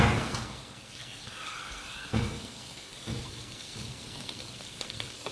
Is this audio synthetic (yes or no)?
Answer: yes